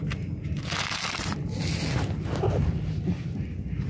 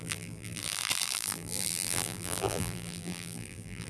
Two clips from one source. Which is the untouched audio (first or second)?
first